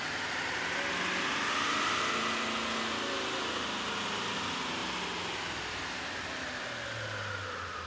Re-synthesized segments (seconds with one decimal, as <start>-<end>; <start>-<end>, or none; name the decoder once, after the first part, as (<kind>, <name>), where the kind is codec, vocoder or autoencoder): none